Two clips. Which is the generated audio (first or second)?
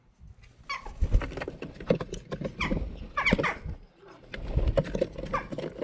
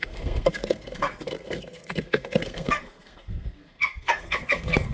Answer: second